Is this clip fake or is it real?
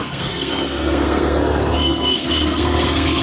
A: fake